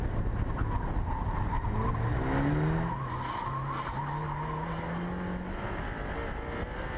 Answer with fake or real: real